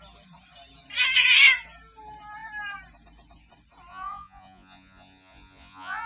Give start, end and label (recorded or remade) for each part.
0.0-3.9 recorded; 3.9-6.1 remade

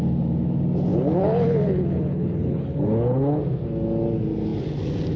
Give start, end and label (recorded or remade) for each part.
0.0-0.9 recorded; 0.9-3.4 remade; 3.4-5.2 recorded

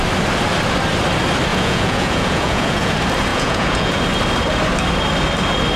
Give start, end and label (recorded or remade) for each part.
0.0-1.5 recorded; 1.5-2.9 remade; 2.9-3.3 recorded; 3.3-4.0 remade; 4.0-5.8 recorded

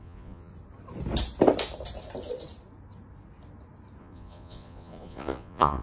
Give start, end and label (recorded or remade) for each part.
0.0-0.5 remade; 0.5-4.0 recorded; 4.0-5.8 remade

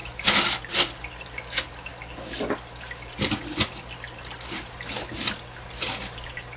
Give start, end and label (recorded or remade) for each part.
0.0-6.6 recorded

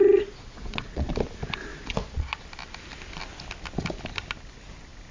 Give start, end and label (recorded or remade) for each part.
0.0-0.4 recorded; 0.4-1.1 remade; 1.1-1.7 recorded; 1.7-2.4 remade; 2.4-5.1 recorded

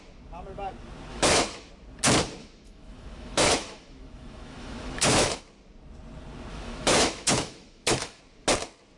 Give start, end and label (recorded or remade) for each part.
0.0-1.1 recorded; 1.1-1.7 remade; 1.7-2.4 recorded; 2.4-5.4 remade; 5.4-6.5 recorded; 6.5-8.2 remade; 8.2-9.0 recorded